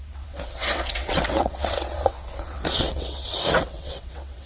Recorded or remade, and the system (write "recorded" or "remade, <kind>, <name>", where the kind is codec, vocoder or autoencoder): remade, vocoder, WaveNeXt